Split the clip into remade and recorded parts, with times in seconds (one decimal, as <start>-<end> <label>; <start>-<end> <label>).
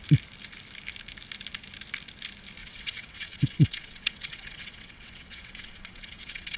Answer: 0.0-2.6 recorded; 2.6-6.6 remade